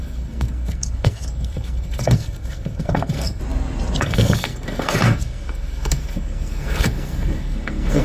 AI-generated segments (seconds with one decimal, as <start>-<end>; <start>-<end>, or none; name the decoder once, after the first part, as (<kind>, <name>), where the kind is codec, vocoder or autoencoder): 0.0-3.4 (codec, SNAC); 4.0-8.0